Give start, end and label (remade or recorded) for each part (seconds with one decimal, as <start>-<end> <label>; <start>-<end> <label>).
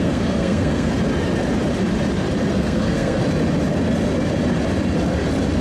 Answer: 0.0-0.9 remade; 0.9-2.5 recorded; 2.5-3.2 remade; 3.2-5.6 recorded